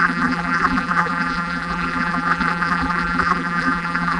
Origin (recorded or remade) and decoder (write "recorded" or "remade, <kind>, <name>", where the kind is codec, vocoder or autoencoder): remade, vocoder, BigVGAN v2